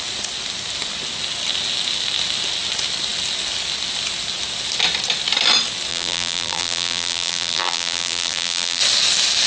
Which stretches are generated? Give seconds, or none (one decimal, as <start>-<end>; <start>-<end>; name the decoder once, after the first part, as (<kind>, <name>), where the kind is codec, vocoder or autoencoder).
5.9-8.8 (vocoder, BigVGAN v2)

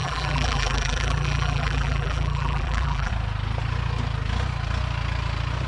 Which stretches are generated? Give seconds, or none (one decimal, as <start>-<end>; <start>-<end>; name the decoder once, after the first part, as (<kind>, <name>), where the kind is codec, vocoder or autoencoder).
0.0-3.1 (vocoder, BigVGAN v2)

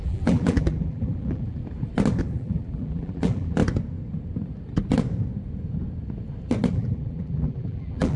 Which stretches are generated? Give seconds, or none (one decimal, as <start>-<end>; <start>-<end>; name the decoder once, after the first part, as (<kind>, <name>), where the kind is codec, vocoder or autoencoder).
0.0-1.6 (vocoder, BigVGAN v2); 2.2-3.6; 6.7-8.2

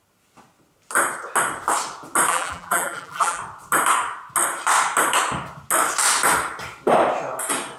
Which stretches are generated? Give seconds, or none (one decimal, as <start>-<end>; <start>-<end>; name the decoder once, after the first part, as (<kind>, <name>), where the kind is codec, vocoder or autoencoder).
2.3-3.4 (vocoder, BigVGAN v2)

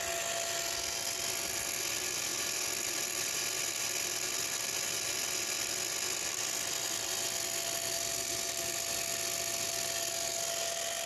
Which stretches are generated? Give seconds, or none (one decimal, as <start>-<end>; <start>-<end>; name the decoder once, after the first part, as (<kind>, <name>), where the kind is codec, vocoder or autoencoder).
none

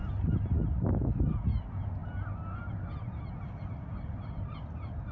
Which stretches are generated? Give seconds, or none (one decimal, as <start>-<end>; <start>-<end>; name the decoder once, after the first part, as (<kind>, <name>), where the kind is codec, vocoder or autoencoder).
none

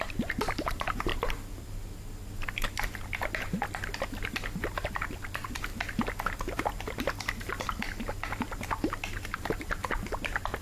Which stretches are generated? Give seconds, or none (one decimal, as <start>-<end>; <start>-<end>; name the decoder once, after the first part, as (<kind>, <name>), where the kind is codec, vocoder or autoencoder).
0.0-1.1 (vocoder, BigVGAN v2); 4.9-5.7; 9.5-10.6